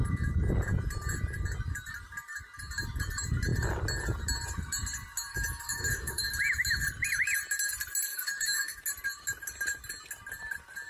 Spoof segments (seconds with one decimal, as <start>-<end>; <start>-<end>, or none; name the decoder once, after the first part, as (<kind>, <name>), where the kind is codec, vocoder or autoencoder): 5.3-6.2 (autoencoder, DAC-VAE); 8.1-8.8